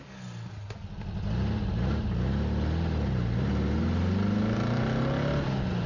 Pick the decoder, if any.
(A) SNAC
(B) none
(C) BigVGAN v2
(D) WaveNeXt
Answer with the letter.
B